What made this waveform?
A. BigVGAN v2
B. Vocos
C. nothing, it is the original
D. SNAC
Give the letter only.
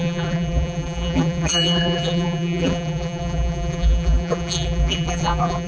A